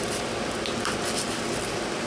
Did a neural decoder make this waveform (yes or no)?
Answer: no